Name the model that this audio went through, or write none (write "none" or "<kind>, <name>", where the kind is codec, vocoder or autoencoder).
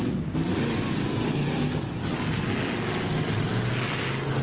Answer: none